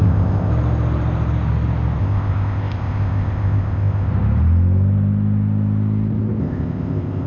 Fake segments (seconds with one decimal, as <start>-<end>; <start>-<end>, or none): 0.0-0.5; 2.0-4.1; 6.4-7.3